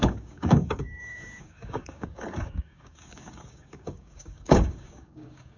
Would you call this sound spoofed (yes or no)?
yes